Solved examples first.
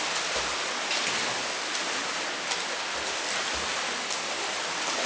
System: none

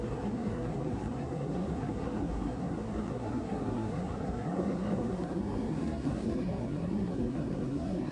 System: codec, SNAC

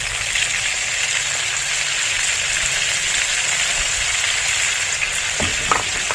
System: none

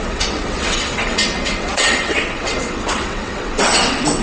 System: vocoder, WaveNeXt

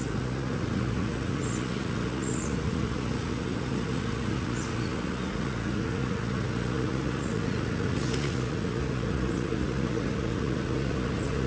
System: vocoder, Vocos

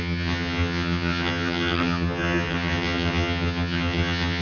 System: vocoder, HiFi-GAN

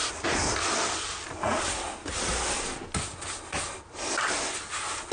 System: none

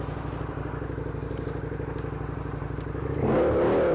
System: none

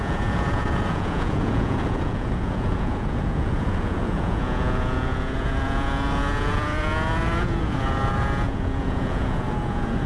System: vocoder, Vocos